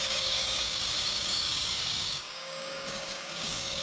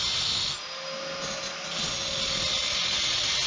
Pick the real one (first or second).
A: second